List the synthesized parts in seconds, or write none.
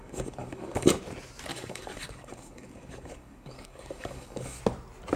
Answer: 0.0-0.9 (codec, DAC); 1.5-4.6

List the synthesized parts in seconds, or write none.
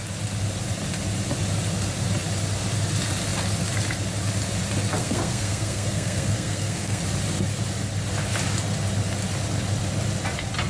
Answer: 5.0-7.0 (codec, SNAC)